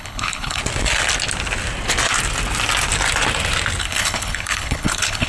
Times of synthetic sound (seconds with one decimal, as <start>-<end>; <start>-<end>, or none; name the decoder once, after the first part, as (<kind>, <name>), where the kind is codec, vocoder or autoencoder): 0.0-0.6 (codec, HILCodec); 3.8-5.3